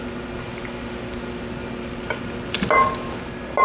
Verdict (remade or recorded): recorded